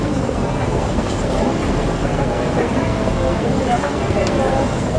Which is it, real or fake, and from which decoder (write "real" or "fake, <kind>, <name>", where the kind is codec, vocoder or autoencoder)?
fake, codec, SNAC